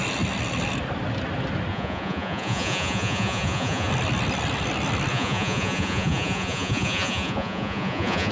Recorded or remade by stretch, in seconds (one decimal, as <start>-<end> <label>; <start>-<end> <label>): 0.0-1.7 recorded; 1.7-3.9 remade; 3.9-5.1 recorded; 5.1-8.3 remade